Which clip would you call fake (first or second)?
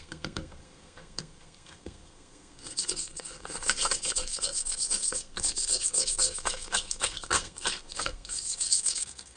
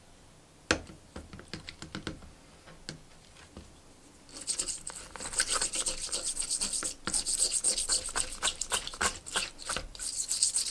first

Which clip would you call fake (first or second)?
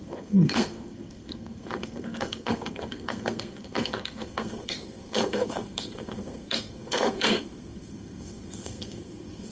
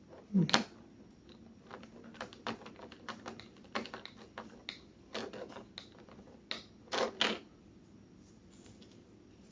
first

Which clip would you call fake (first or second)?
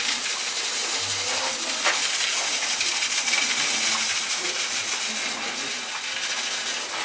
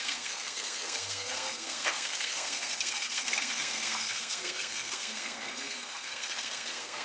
second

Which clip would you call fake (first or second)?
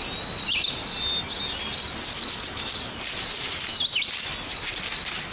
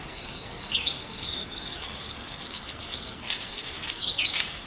second